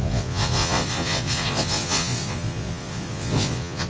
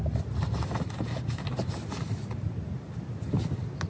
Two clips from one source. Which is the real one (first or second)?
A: second